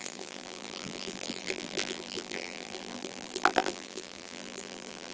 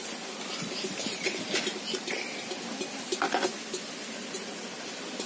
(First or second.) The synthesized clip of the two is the first